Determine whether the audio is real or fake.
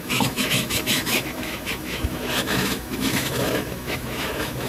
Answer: fake